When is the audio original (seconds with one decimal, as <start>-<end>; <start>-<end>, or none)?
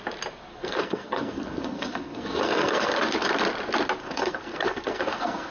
0.0-0.5; 3.0-4.0